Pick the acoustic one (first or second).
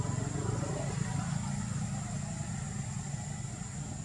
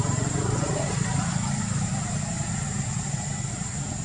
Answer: first